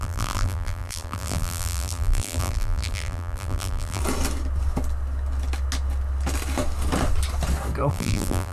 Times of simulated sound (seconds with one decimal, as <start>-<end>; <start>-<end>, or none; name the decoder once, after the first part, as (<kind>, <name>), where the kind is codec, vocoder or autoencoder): 0.0-4.0 (vocoder, BigVGAN v2); 7.9-8.5